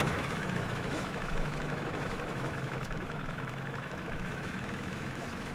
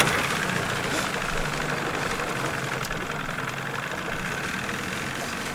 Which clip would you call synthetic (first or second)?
first